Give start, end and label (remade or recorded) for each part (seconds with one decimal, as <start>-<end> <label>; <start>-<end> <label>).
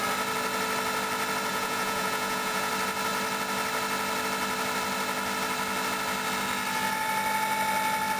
0.0-1.5 recorded; 1.5-2.7 remade; 2.7-8.2 recorded